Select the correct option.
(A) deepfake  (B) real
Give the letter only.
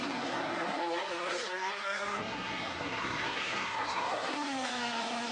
A